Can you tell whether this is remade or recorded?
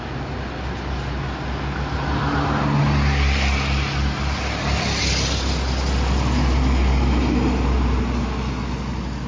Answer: recorded